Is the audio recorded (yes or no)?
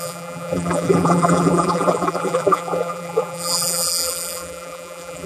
no